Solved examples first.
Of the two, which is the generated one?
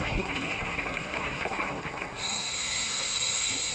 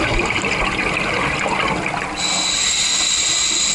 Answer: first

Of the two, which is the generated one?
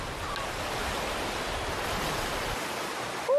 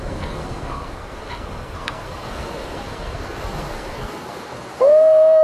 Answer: second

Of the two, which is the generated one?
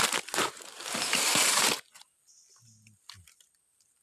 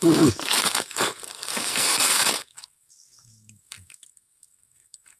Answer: second